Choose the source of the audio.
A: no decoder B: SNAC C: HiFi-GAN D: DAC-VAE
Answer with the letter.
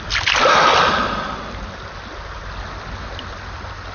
A